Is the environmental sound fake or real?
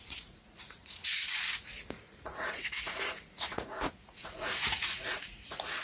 fake